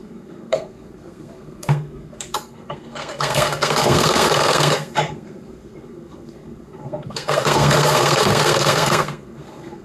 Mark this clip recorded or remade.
remade